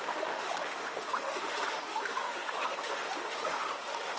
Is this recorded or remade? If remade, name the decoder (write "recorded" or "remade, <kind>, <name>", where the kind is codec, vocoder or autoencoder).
remade, autoencoder, DAC-VAE